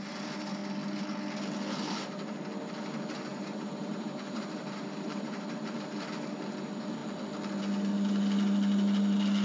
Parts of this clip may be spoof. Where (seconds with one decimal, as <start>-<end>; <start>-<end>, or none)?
3.3-5.4